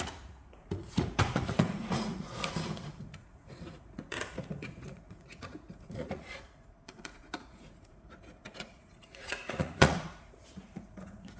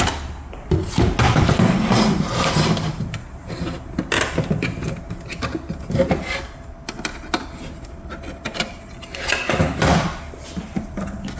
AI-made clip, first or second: first